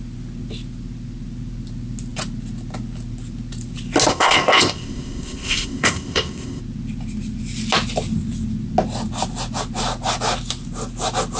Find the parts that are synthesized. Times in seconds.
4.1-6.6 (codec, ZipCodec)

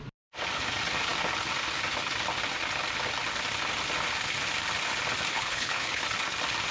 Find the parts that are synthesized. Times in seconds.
5.3-6.0 (codec, HILCodec)